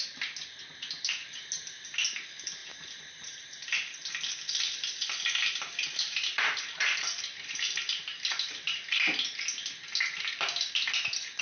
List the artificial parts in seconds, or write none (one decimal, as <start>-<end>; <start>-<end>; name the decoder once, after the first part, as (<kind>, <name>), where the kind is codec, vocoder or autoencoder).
none